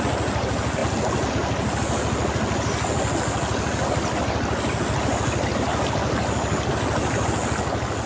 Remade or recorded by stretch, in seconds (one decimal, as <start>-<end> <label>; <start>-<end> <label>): 0.0-8.1 recorded